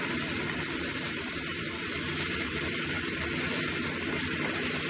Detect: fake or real real